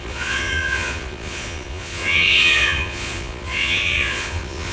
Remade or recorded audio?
remade